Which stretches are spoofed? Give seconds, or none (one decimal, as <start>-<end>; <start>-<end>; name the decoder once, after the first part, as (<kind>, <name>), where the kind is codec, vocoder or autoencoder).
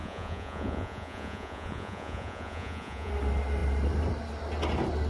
0.0-3.1 (vocoder, Vocos)